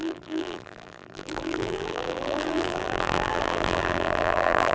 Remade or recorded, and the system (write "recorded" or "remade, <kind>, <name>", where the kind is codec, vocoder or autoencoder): remade, vocoder, BigVGAN v2